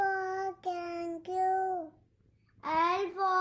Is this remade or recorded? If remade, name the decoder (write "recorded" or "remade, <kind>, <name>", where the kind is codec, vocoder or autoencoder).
recorded